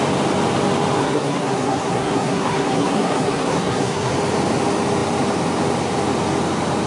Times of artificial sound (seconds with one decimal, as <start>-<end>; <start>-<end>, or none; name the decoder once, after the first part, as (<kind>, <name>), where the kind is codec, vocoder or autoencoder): 1.0-4.1 (codec, SNAC)

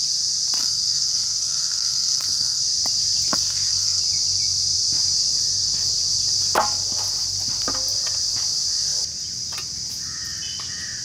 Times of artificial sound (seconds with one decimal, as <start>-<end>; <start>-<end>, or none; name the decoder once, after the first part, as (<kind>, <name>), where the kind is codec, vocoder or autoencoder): 0.6-2.6 (codec, SNAC); 3.3-4.0

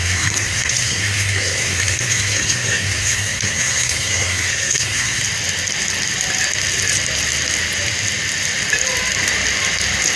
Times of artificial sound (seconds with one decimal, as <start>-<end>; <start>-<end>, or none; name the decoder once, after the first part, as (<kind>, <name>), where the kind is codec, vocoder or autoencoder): 0.0-5.2 (codec, SNAC)

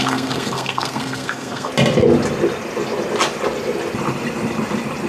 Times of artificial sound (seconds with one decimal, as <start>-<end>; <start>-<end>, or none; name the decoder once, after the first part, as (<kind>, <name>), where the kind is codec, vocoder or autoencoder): 0.0-1.7 (codec, SNAC)

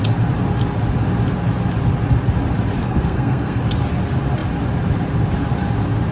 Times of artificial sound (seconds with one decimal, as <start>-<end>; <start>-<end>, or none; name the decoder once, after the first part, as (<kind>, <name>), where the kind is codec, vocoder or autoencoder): 2.8-3.6 (codec, SNAC)

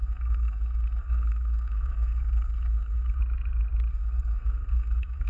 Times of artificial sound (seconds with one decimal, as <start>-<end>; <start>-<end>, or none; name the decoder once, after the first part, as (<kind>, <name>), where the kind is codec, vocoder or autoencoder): 0.0-3.2 (codec, SNAC); 3.9-5.3